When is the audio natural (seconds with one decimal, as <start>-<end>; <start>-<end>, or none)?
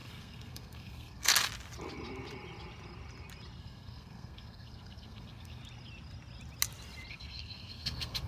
1.3-3.6; 5.6-7.1